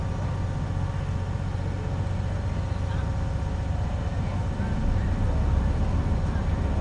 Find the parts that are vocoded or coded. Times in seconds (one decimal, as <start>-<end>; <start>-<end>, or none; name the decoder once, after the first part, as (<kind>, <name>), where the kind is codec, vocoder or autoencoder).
none